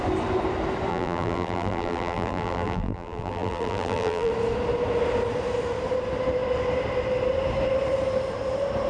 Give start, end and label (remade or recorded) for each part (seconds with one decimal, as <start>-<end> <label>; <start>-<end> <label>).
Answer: 0.0-0.9 recorded; 0.9-4.3 remade; 4.3-8.9 recorded